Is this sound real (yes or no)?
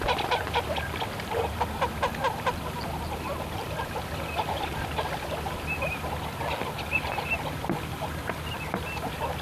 yes